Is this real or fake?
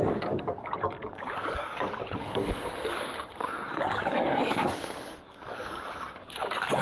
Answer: fake